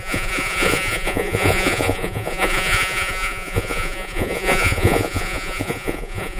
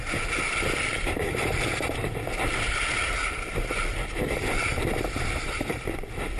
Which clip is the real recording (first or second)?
second